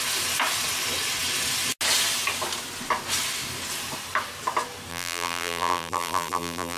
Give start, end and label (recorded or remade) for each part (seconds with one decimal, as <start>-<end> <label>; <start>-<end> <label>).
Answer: 0.0-4.9 recorded; 4.9-6.8 remade